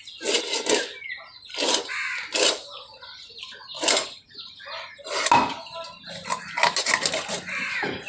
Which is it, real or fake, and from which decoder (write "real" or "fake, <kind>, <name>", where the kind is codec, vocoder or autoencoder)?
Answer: real